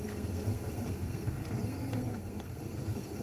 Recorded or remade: remade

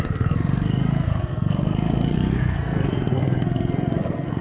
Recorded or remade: remade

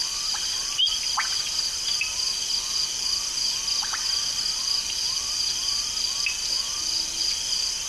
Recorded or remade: recorded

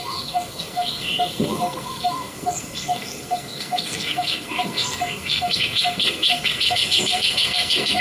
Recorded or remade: remade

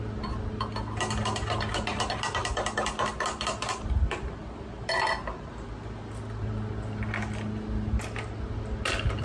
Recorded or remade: recorded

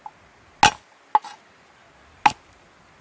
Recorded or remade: recorded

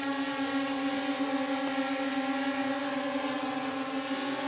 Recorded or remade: recorded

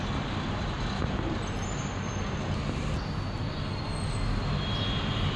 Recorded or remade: recorded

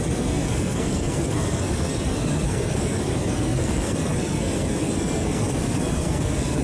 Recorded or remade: remade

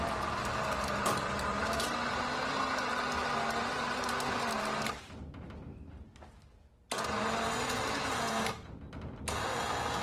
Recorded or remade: recorded